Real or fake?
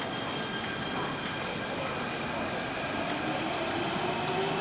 real